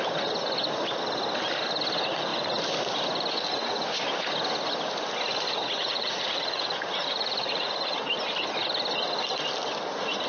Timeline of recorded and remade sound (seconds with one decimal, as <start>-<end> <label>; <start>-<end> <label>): 0.0-5.6 recorded; 5.6-8.1 remade; 8.1-10.3 recorded